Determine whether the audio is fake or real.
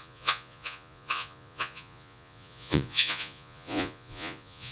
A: fake